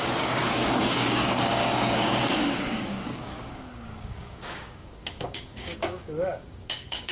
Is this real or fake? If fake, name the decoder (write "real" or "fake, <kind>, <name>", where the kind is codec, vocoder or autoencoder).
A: fake, codec, DAC